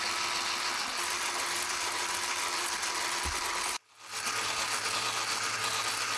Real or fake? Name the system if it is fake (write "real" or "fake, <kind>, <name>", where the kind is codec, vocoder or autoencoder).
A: real